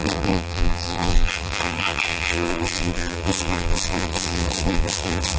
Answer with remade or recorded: remade